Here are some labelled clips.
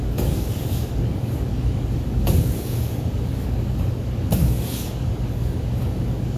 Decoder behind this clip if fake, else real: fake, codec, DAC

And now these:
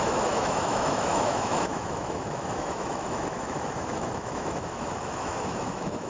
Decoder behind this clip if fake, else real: fake, autoencoder, DAC-VAE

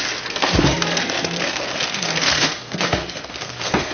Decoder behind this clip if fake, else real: fake, codec, SNAC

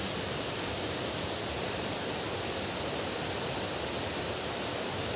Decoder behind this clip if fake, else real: real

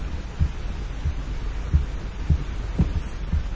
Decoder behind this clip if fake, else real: real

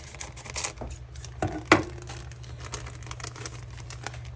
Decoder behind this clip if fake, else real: real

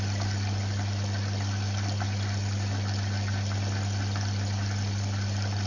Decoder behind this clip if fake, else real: real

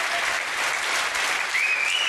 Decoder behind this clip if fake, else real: real